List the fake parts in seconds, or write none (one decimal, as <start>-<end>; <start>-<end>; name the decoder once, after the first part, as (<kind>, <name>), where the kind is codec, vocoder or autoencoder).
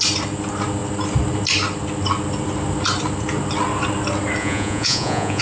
4.4-5.4 (vocoder, Vocos)